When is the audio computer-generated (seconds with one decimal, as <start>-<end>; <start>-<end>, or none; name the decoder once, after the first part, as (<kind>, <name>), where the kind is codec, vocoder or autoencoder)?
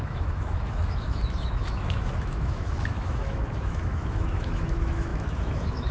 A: 0.0-5.9 (autoencoder, DAC-VAE)